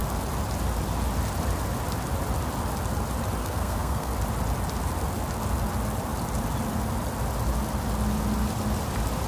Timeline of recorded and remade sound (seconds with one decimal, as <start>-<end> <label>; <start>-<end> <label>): 0.0-3.4 recorded; 3.4-4.1 remade; 4.1-9.3 recorded